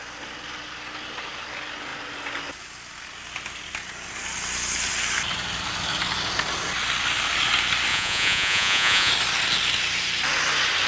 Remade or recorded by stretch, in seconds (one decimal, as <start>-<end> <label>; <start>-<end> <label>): 0.0-7.9 recorded; 7.9-9.1 remade; 9.1-10.9 recorded